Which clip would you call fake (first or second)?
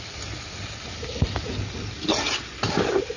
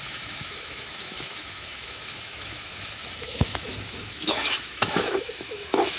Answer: second